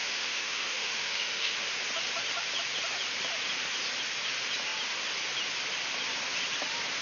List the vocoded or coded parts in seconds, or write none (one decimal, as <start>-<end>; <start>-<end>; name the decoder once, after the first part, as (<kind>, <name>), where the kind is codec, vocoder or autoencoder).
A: 0.0-1.7 (autoencoder, DAC-VAE)